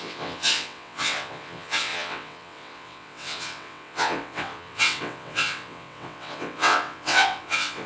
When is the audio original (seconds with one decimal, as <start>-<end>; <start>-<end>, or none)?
none